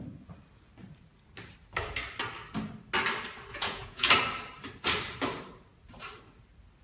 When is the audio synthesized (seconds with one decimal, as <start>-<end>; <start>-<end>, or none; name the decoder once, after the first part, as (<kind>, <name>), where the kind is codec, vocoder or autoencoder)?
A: 3.5-4.1 (vocoder, Vocos)